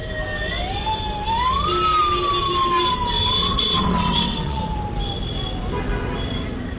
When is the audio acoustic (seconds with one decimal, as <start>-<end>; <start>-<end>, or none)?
0.0-3.4; 4.6-6.8